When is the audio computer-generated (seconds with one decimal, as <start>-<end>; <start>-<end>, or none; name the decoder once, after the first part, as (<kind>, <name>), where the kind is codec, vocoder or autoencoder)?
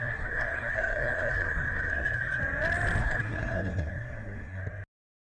0.0-2.4 (codec, SNAC); 3.0-4.6